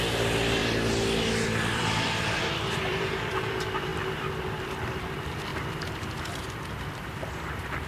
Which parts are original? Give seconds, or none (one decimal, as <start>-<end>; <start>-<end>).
0.6-1.7; 3.9-4.4; 5.5-7.9